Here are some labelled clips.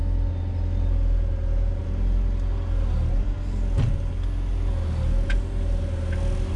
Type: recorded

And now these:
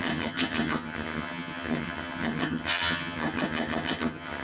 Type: remade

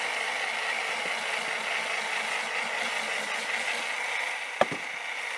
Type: recorded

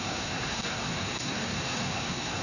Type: remade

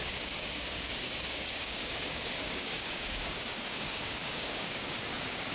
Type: remade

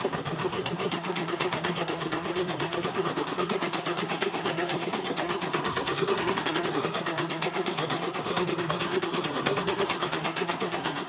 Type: remade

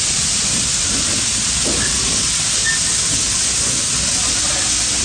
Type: recorded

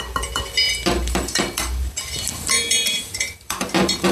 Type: remade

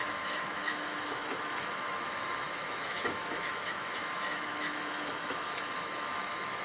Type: remade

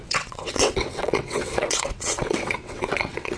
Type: remade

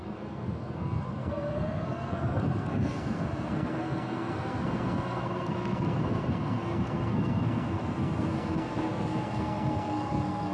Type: remade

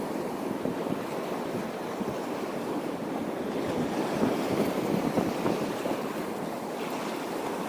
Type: recorded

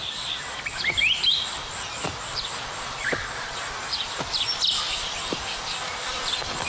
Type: remade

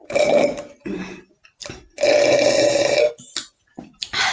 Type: recorded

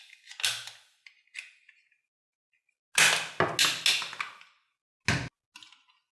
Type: recorded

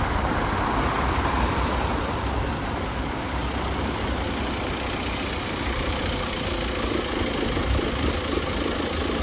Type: recorded